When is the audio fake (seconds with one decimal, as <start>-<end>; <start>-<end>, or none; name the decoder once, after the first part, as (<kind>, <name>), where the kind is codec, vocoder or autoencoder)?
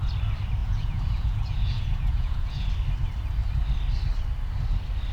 0.6-2.7 (vocoder, Vocos)